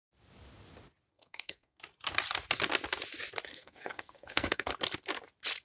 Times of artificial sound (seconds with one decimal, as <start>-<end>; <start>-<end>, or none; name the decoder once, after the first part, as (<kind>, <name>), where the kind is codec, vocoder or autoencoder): 1.1-1.8 (codec, SNAC); 3.5-4.7